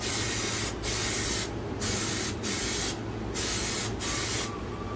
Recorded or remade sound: recorded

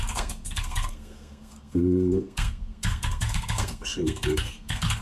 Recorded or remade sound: remade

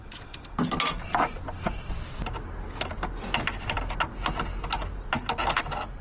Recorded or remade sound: recorded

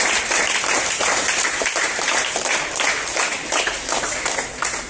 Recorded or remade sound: remade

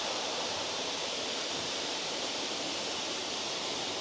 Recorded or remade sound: remade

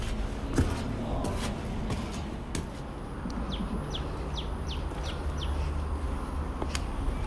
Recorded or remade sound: recorded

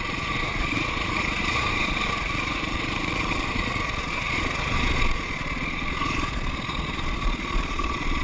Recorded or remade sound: remade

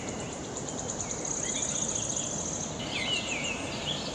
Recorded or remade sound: recorded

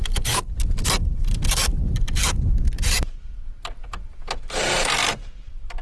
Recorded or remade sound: recorded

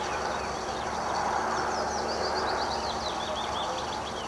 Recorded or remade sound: recorded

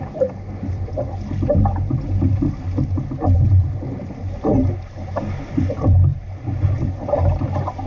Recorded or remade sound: recorded